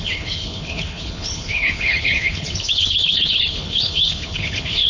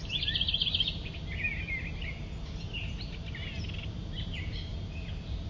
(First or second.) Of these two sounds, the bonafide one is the second